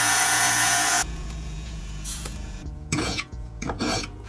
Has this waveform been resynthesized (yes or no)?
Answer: yes